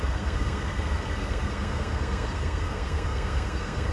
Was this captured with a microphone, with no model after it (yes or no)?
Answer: no